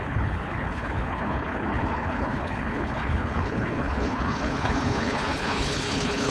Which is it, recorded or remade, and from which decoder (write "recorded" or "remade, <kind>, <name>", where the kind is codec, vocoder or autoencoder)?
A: remade, codec, HILCodec